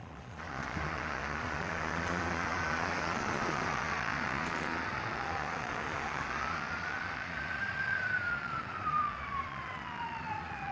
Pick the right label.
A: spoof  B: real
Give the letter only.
A